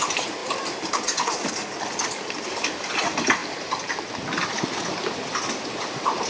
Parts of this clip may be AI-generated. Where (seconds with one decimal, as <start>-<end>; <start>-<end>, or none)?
none